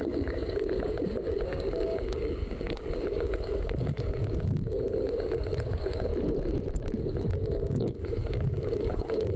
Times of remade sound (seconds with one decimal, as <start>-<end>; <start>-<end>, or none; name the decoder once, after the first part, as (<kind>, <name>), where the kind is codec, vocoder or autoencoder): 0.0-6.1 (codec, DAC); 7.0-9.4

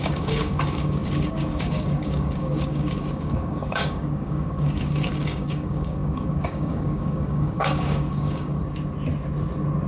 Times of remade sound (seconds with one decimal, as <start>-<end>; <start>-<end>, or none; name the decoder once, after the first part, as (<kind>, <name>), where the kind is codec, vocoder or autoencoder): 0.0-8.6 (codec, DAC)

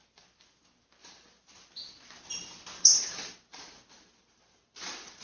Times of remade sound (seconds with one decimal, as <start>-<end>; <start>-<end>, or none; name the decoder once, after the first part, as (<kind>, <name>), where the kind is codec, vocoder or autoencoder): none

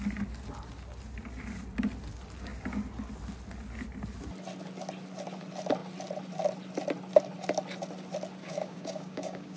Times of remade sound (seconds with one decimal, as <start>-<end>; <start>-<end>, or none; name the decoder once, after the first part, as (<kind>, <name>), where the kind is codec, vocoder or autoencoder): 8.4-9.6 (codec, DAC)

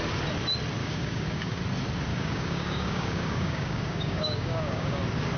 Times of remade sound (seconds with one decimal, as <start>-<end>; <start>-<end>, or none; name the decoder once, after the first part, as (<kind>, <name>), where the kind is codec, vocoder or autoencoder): 0.8-1.6 (codec, DAC); 2.1-5.0

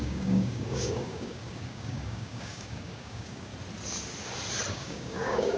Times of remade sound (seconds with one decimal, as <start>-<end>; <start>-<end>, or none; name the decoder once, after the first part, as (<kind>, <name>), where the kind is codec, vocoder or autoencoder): 0.0-3.5 (codec, DAC); 4.7-5.6